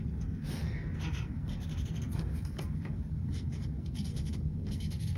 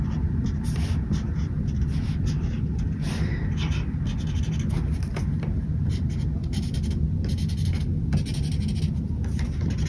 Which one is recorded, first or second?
second